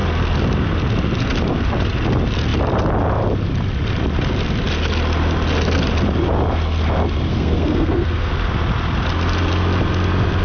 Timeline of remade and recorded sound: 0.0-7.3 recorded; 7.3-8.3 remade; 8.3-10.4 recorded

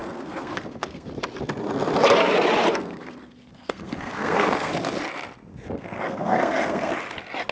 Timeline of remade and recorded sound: 0.0-1.1 remade; 1.1-2.7 recorded; 2.7-4.7 remade; 4.7-5.5 recorded; 5.5-6.9 remade; 6.9-7.5 recorded

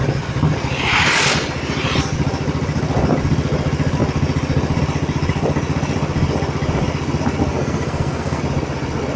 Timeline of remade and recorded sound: 0.0-7.5 recorded; 7.5-8.4 remade; 8.4-9.2 recorded

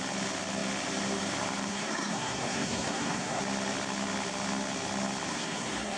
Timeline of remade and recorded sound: 0.0-1.7 recorded; 1.7-3.4 remade; 3.4-5.3 recorded; 5.3-6.0 remade